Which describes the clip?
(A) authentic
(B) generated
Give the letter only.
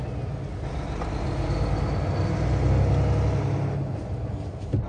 A